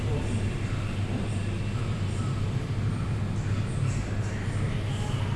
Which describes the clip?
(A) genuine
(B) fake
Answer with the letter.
A